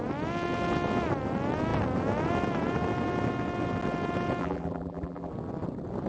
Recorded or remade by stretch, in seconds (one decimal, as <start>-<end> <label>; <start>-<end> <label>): 0.0-4.4 recorded; 4.4-5.3 remade; 5.3-6.1 recorded